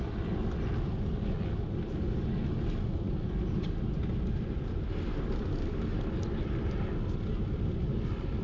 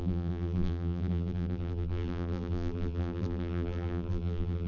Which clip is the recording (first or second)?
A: first